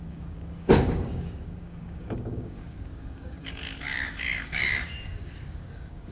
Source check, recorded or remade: remade